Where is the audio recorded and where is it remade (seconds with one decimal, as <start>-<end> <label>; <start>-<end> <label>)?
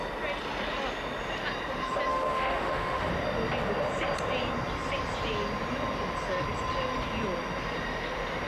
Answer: 0.0-2.1 recorded; 2.1-3.1 remade; 3.1-8.5 recorded